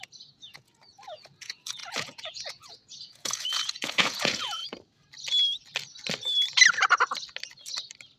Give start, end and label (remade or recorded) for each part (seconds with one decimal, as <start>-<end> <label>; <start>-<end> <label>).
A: 0.0-4.6 remade; 4.6-8.2 recorded